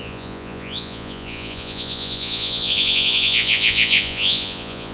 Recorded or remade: remade